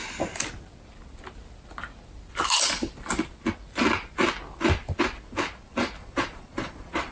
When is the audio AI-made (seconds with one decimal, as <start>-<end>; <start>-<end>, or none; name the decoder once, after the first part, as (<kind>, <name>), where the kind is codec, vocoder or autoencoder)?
6.0-7.1 (vocoder, Vocos)